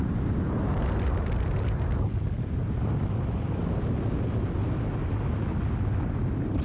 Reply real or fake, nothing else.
real